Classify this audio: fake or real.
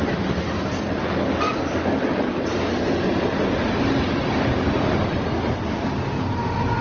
real